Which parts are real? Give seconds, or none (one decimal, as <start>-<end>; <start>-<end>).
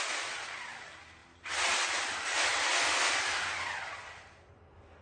0.0-5.0